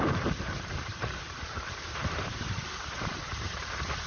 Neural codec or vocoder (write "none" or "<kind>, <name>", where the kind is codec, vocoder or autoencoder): vocoder, BigVGAN v2